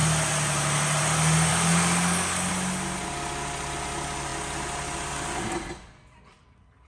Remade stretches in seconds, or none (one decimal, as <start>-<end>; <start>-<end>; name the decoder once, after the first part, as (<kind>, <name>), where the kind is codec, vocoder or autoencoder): 1.5-2.5 (codec, DAC)